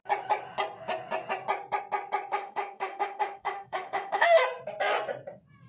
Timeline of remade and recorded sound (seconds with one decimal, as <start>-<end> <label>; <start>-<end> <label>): 0.0-2.3 recorded; 2.3-4.4 remade; 4.4-5.7 recorded

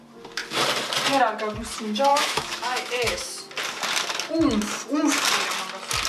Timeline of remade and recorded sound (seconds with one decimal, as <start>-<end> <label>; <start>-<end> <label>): 0.0-2.1 recorded; 2.1-3.4 remade; 3.4-6.1 recorded

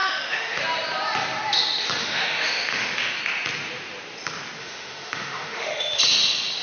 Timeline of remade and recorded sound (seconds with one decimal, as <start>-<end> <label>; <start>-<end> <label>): 0.0-0.6 remade; 0.6-2.0 recorded; 2.0-3.2 remade; 3.2-4.6 recorded; 4.6-6.0 remade; 6.0-6.6 recorded

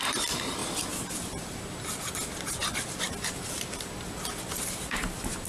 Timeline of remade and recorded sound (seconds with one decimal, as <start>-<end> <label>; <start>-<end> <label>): 0.0-5.5 recorded

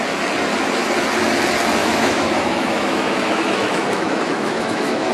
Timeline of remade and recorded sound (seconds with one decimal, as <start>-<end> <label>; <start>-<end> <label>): 0.0-1.8 recorded; 1.8-5.1 remade

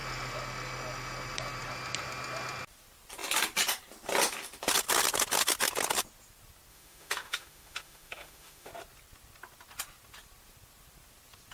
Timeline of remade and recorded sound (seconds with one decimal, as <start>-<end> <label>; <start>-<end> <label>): 0.0-6.7 recorded; 6.7-8.7 remade; 8.7-11.5 recorded